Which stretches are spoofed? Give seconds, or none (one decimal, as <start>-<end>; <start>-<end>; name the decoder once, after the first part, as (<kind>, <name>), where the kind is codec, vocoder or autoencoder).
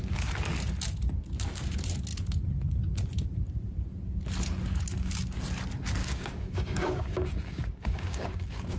6.0-8.8 (codec, DAC)